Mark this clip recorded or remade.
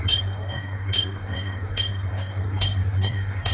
remade